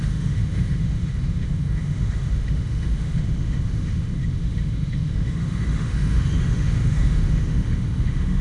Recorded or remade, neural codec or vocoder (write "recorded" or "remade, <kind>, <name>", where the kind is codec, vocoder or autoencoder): remade, autoencoder, DAC-VAE